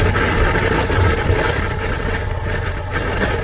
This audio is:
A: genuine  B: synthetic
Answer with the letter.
A